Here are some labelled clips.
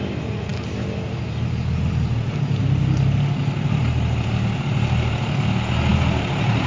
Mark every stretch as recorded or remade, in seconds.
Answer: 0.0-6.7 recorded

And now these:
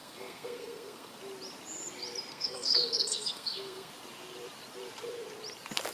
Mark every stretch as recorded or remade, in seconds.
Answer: 0.0-1.2 remade; 1.2-2.3 recorded; 2.3-3.9 remade; 3.9-5.9 recorded

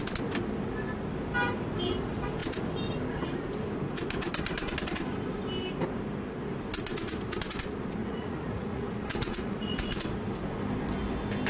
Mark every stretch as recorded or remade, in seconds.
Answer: 0.0-8.0 recorded; 8.0-10.0 remade; 10.0-11.5 recorded